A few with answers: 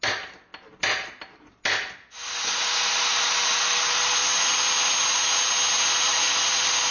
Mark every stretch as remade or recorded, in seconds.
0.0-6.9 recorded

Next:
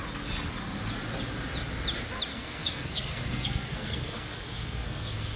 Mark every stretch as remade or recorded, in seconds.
0.0-2.3 recorded; 2.3-5.4 remade

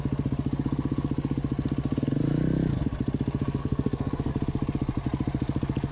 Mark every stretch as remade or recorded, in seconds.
0.0-3.6 recorded; 3.6-4.3 remade; 4.3-5.9 recorded

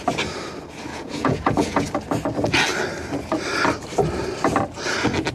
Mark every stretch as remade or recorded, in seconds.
0.0-0.9 recorded; 0.9-1.9 remade; 1.9-5.3 recorded

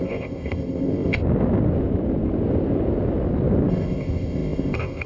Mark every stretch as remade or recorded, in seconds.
0.0-1.2 remade; 1.2-3.7 recorded; 3.7-5.1 remade

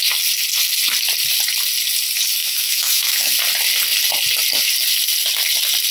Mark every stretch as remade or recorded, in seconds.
0.0-2.4 recorded; 2.4-3.4 remade; 3.4-5.9 recorded

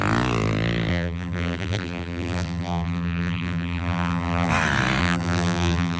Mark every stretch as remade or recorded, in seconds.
0.0-0.9 recorded; 0.9-4.5 remade; 4.5-5.0 recorded; 5.0-6.0 remade